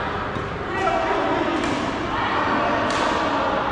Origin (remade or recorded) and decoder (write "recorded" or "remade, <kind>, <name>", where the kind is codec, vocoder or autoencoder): recorded